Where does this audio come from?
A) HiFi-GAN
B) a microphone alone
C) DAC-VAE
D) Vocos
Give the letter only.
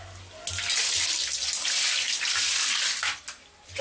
B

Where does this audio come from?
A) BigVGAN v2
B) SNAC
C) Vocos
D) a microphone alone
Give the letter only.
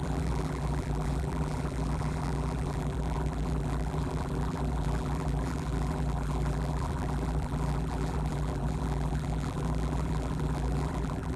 A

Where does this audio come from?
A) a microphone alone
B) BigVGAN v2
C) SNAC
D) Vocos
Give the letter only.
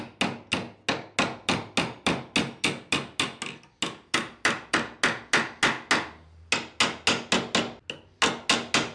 A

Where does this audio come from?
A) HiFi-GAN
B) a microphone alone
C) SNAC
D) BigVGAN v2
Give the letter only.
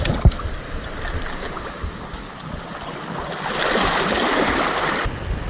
B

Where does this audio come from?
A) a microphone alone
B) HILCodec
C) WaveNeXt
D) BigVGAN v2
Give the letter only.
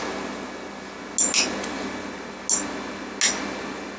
A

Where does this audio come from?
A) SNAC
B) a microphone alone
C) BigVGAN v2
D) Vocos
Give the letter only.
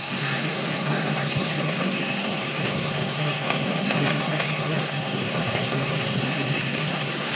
A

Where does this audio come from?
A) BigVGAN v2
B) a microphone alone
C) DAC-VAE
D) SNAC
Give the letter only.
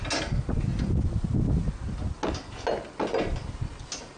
B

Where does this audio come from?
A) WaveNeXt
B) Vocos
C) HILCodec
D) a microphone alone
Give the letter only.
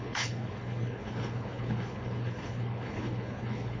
C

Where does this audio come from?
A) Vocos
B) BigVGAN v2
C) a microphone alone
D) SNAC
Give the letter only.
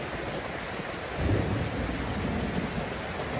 C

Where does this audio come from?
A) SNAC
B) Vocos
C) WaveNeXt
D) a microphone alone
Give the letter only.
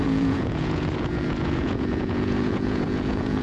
B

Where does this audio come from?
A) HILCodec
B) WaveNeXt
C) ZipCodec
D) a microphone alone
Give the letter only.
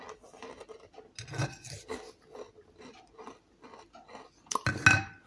D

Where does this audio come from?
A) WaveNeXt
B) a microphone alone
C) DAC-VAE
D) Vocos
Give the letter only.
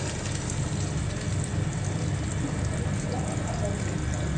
B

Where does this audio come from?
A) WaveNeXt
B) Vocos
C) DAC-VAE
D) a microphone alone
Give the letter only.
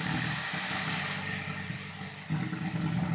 D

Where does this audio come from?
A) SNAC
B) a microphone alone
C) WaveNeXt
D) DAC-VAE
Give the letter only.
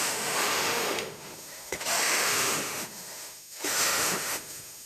D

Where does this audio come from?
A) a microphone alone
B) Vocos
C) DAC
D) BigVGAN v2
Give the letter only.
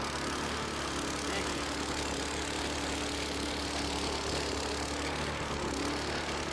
A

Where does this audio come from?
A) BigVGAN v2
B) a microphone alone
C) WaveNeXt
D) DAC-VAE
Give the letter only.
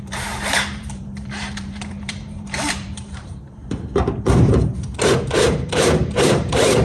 A